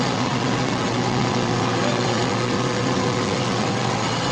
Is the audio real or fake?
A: fake